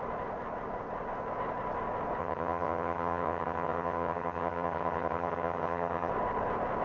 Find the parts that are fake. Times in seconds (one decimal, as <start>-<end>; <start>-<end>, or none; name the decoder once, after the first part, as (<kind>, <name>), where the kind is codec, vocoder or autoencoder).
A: 2.2-6.1 (vocoder, HiFi-GAN)